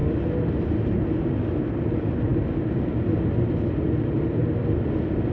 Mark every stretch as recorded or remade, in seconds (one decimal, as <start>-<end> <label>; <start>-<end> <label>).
0.0-5.3 recorded